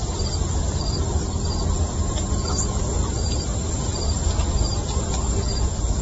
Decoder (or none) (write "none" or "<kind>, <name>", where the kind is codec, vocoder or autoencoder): none